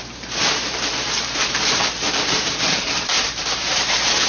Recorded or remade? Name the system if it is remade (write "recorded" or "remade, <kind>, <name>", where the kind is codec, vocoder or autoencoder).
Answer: remade, vocoder, BigVGAN v2